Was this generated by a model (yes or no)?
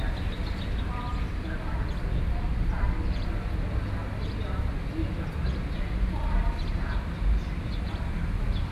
no